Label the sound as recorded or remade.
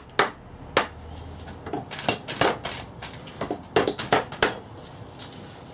recorded